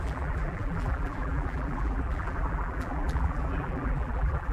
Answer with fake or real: fake